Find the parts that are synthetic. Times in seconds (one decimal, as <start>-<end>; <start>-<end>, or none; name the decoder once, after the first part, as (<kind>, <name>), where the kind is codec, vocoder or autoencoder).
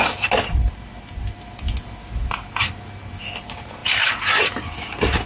none